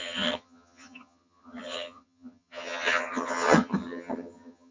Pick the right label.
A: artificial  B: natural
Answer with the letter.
A